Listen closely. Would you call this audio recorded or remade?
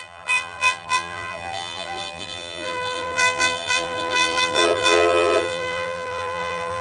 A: remade